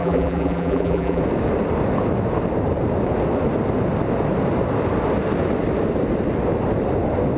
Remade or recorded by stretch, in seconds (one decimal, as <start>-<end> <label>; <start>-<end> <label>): 0.0-1.2 remade; 1.2-7.4 recorded